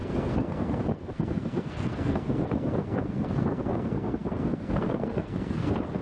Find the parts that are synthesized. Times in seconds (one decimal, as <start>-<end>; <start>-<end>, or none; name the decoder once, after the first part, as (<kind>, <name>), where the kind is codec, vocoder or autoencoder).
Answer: 0.0-6.0 (codec, SNAC)